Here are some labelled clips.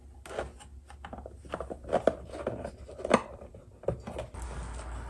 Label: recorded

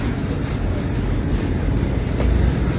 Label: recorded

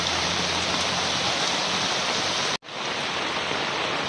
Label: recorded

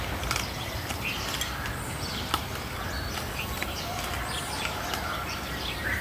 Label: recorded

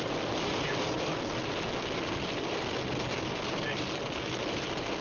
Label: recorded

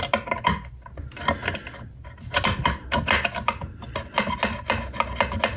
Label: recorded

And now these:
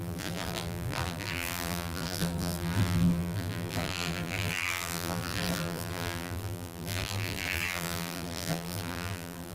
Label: remade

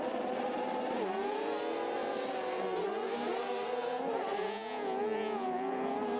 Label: recorded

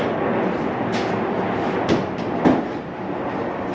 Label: recorded